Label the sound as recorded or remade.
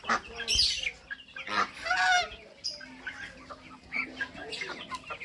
recorded